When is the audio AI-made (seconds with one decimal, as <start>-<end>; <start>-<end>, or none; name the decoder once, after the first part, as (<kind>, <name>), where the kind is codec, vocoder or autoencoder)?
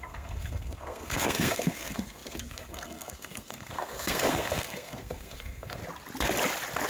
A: 0.0-5.8 (codec, SNAC)